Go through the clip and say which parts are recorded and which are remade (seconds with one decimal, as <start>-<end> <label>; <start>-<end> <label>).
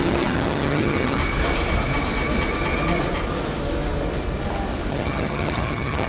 0.0-1.2 remade; 1.2-4.9 recorded; 4.9-6.1 remade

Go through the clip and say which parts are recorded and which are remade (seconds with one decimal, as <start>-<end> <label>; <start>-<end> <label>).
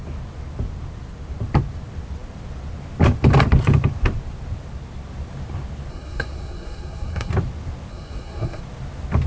0.0-5.9 recorded; 5.9-7.3 remade; 7.3-7.9 recorded; 7.9-8.6 remade; 8.6-9.3 recorded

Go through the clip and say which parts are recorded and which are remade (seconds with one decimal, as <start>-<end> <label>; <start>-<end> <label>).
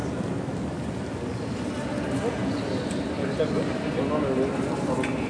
0.0-5.3 recorded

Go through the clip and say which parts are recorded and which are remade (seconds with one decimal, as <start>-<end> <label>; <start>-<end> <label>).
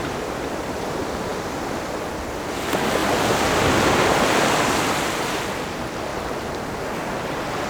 0.0-7.7 recorded